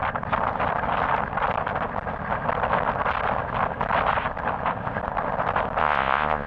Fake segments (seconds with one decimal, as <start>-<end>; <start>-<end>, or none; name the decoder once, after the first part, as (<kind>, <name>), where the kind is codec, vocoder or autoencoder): 5.8-6.5 (vocoder, Vocos)